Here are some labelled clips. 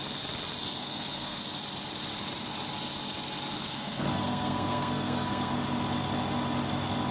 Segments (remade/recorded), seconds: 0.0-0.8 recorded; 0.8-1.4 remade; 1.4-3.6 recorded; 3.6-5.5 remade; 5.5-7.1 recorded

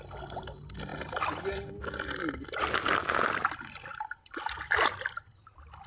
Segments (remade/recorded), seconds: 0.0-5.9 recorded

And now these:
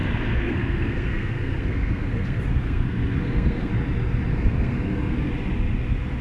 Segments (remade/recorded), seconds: 0.0-3.7 remade; 3.7-4.3 recorded; 4.3-5.3 remade; 5.3-6.2 recorded

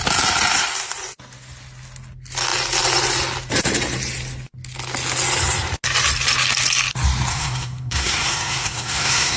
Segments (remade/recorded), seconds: 0.0-7.3 recorded; 7.3-9.4 remade

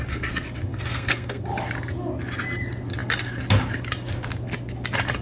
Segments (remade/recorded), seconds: 0.0-0.7 recorded; 0.7-1.4 remade; 1.4-5.2 recorded

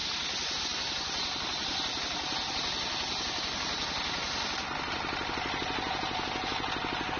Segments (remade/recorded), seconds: 0.0-7.2 recorded